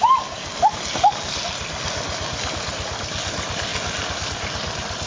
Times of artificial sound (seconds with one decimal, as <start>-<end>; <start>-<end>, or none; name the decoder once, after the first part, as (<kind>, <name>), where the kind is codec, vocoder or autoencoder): none